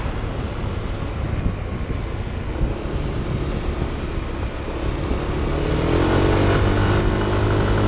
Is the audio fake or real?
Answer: real